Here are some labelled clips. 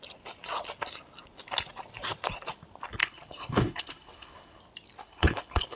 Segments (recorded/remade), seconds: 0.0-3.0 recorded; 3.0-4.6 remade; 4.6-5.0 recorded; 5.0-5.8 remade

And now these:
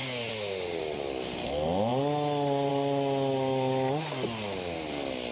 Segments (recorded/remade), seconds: 0.0-5.3 recorded